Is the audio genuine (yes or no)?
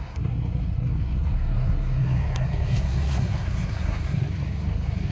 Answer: no